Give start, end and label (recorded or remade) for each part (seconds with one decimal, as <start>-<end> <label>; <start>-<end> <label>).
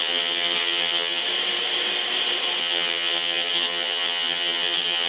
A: 0.0-1.2 remade; 1.2-2.6 recorded; 2.6-5.1 remade